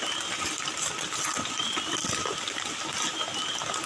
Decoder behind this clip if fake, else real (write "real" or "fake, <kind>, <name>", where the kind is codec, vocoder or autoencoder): real